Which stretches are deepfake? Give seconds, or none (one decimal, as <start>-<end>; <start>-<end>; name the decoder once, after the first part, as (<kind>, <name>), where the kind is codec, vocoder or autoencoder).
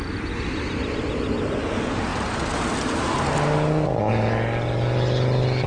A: none